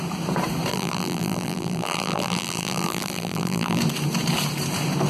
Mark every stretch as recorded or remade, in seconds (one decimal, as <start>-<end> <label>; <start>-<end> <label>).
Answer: 0.0-0.7 recorded; 0.7-3.8 remade; 3.8-5.1 recorded